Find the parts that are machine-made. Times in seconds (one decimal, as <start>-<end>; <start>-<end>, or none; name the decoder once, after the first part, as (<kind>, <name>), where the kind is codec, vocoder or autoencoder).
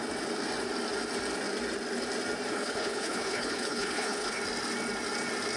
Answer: 2.5-4.4 (codec, HILCodec)